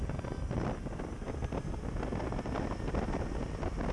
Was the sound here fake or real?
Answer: real